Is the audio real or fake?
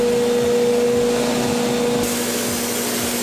real